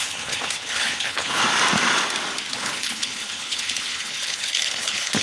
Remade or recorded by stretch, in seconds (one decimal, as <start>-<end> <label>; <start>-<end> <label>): 0.0-1.4 remade; 1.4-2.5 recorded; 2.5-5.2 remade